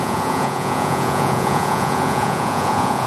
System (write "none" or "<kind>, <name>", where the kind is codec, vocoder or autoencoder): vocoder, Vocos